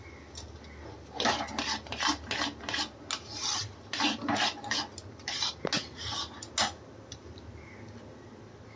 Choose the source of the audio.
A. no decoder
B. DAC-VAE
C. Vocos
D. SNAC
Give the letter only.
A